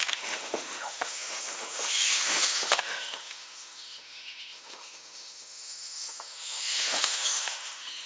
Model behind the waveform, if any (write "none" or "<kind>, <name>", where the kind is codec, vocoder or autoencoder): autoencoder, DAC-VAE